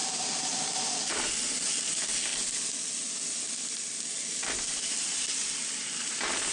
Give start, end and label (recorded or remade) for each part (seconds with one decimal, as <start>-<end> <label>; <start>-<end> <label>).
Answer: 0.0-1.3 recorded; 1.3-2.3 remade; 2.3-4.8 recorded; 4.8-6.5 remade